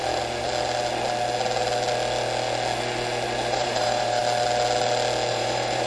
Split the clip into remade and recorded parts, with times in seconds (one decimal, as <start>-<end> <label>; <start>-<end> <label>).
0.0-3.5 recorded; 3.5-4.2 remade; 4.2-5.3 recorded; 5.3-5.9 remade